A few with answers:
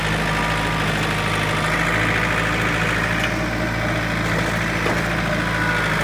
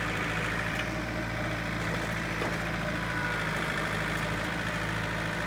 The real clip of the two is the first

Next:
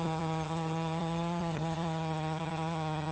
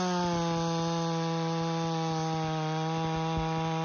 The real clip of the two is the second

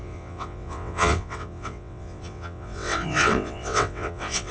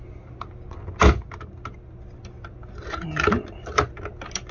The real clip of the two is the second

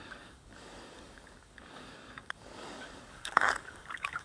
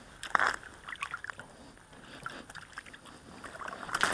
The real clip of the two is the second